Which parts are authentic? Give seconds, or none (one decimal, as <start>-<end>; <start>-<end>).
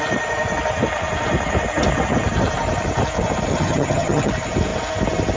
0.0-3.5; 4.3-5.4